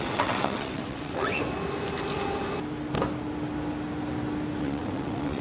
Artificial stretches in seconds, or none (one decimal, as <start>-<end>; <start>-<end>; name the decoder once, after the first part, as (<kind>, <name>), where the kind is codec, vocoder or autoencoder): 0.0-1.4 (vocoder, WaveNeXt); 4.6-5.4